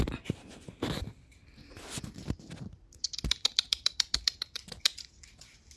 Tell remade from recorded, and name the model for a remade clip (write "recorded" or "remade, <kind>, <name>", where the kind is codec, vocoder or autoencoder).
remade, vocoder, BigVGAN v2